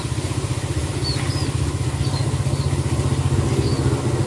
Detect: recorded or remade recorded